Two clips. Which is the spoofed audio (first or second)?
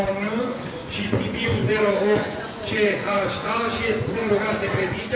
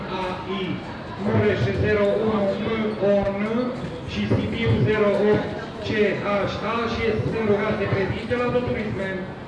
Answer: first